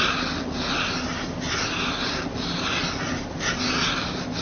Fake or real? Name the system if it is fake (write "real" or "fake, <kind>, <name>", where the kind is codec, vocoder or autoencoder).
real